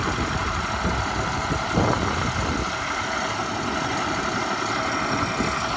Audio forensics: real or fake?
real